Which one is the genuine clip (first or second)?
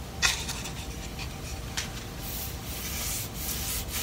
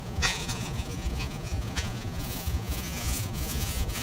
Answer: first